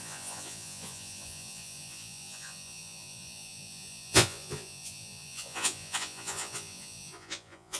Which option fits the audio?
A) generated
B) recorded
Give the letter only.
A